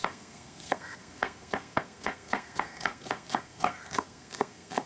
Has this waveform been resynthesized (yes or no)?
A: yes